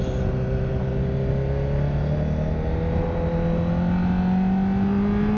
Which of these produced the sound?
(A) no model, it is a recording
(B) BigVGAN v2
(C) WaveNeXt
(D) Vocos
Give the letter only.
A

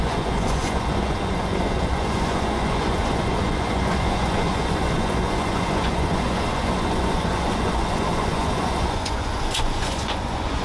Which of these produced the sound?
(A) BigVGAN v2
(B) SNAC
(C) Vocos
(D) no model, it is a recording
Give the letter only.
C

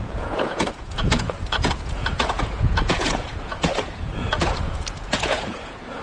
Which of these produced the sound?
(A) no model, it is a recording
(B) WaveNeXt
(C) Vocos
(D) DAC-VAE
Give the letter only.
C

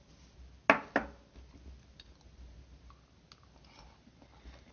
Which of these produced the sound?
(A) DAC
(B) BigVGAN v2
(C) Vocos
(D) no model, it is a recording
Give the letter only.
D